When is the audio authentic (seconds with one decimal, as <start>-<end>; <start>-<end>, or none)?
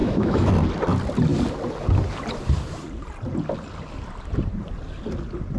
0.5-5.6